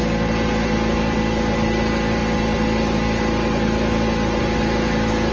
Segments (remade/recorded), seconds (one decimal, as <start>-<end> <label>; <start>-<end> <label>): 0.0-5.3 recorded